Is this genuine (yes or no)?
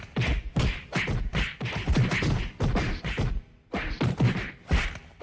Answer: yes